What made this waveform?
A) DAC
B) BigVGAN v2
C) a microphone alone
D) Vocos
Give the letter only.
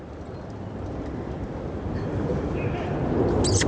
C